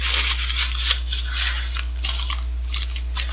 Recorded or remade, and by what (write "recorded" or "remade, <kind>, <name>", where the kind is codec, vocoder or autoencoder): recorded